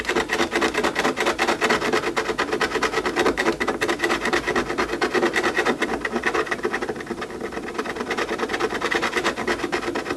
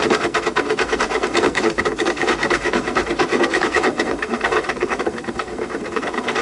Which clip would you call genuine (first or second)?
first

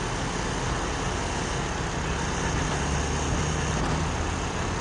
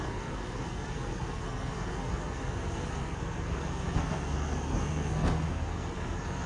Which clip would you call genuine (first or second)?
first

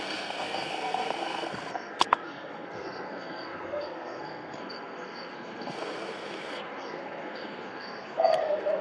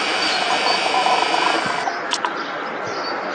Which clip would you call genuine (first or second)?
second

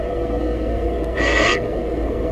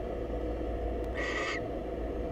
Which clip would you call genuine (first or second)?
second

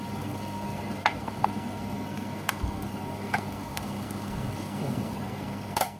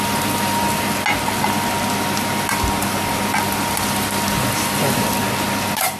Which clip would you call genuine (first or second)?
second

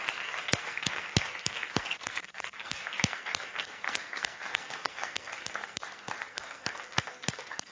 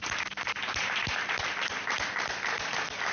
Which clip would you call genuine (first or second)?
second